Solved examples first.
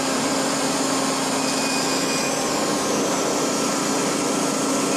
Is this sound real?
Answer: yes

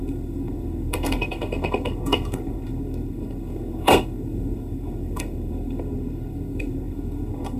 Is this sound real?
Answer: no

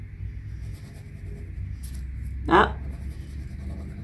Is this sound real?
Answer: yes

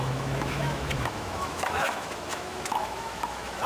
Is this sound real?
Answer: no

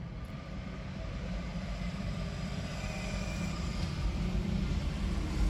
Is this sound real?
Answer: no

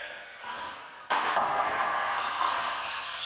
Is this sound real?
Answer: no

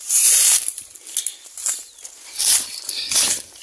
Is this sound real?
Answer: yes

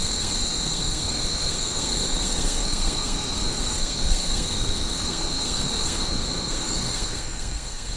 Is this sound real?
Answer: no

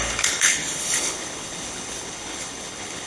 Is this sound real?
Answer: no